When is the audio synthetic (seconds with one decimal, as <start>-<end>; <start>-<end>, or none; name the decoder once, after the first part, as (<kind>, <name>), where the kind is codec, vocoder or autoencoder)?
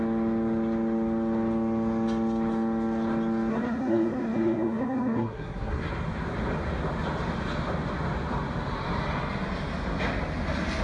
3.5-5.9 (codec, SNAC)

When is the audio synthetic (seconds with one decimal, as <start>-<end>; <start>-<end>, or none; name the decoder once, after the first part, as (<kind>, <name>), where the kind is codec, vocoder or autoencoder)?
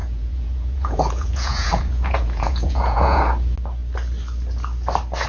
0.0-3.2 (vocoder, Vocos)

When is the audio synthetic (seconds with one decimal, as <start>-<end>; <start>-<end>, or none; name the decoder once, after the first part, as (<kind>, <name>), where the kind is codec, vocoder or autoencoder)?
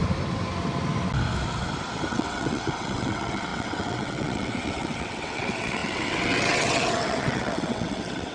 2.1-8.3 (vocoder, WaveNeXt)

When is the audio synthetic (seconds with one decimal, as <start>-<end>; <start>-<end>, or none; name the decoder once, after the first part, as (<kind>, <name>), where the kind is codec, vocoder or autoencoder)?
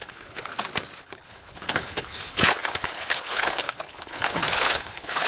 0.0-0.5 (codec, HILCodec); 1.0-5.3